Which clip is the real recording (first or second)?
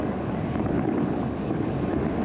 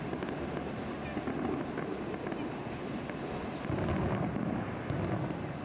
second